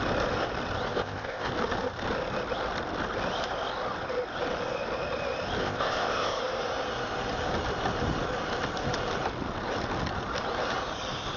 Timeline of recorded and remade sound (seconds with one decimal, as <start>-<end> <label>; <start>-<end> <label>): 0.0-0.9 recorded; 0.9-1.5 remade; 1.5-5.6 recorded; 5.6-6.4 remade; 6.4-11.4 recorded